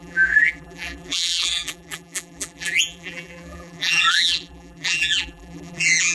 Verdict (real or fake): fake